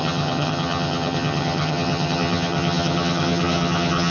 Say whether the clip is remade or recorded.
remade